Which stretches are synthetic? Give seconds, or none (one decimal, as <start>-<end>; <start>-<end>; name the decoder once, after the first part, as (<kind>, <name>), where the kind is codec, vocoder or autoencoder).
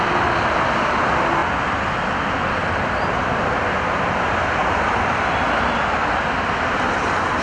none